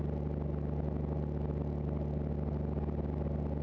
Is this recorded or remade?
recorded